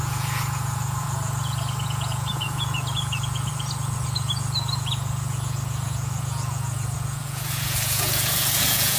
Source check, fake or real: fake